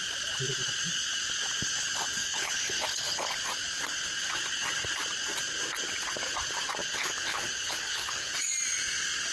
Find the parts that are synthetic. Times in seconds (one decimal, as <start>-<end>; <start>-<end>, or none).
2.2-3.3; 6.8-8.3